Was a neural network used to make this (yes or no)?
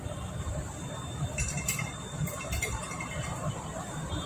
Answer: no